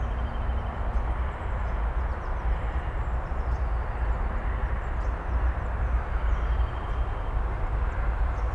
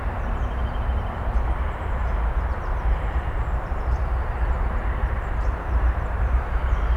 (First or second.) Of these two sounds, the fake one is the second